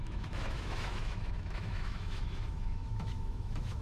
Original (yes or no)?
no